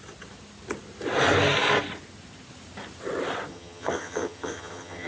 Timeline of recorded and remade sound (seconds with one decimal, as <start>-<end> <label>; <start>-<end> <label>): 0.0-3.5 recorded; 3.5-5.1 remade